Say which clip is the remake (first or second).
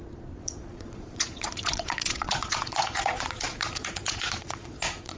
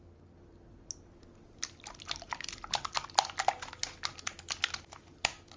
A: first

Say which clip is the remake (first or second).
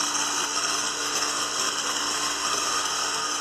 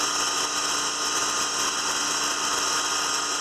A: first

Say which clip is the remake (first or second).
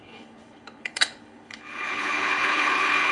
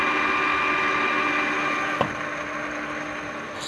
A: first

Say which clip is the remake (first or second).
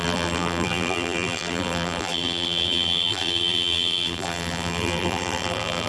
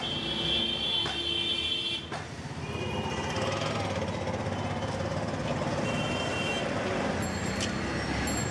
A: first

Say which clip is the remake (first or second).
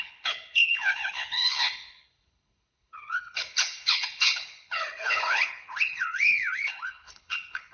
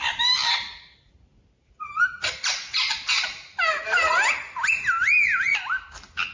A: first